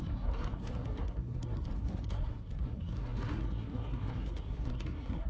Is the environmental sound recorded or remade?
remade